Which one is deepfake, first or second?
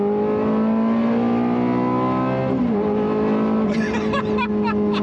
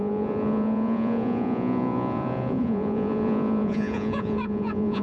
second